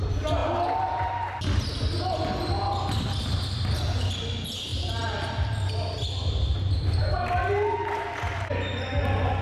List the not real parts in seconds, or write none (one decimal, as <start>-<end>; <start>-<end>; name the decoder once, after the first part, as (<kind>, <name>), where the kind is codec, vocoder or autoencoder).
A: 4.7-5.7 (vocoder, BigVGAN v2); 6.2-7.0